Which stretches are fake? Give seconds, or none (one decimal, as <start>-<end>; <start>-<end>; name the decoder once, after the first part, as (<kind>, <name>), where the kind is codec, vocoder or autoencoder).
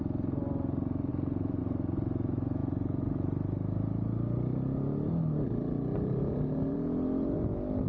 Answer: 1.1-1.6 (vocoder, BigVGAN v2)